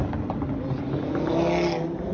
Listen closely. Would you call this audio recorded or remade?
recorded